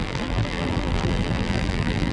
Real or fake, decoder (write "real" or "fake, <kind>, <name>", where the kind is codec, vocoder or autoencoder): fake, vocoder, BigVGAN v2